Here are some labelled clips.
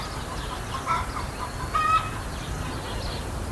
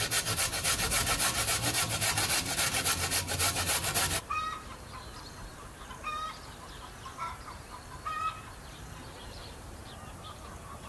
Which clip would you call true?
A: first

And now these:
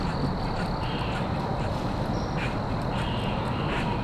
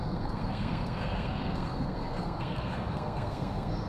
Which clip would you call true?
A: first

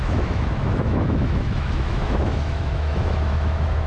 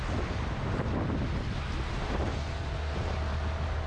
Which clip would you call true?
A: second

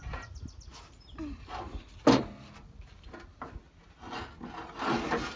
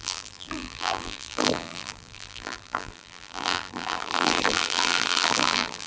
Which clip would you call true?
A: first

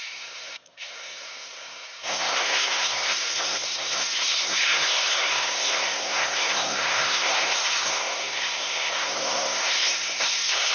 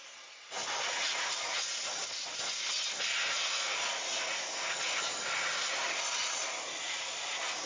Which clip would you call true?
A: second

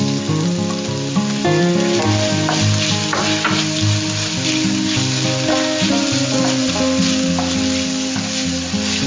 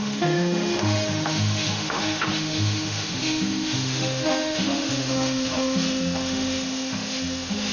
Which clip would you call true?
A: first